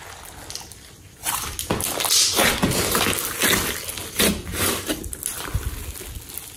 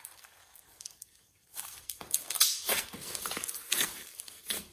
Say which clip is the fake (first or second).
second